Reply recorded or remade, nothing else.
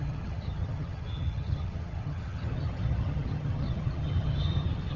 remade